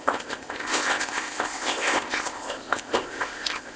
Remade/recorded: remade